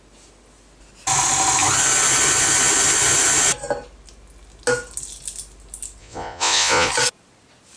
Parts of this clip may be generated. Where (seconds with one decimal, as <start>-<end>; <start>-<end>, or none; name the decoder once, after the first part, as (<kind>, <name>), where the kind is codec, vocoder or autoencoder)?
6.0-6.9 (vocoder, Vocos)